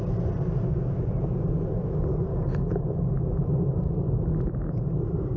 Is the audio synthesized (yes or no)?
no